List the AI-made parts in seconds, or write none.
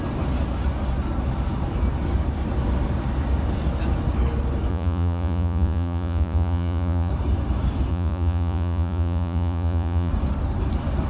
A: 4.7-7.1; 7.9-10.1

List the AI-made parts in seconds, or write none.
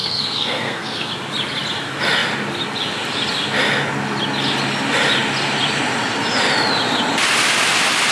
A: 0.0-1.1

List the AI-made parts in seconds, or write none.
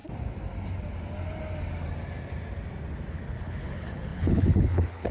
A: 3.1-5.1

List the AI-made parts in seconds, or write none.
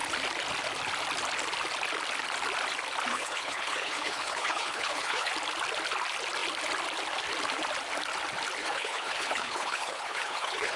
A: 3.1-5.3; 8.6-10.8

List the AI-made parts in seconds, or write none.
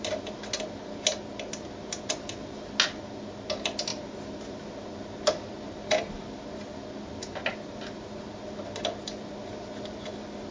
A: none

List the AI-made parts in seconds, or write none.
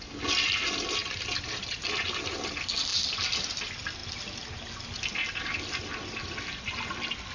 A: none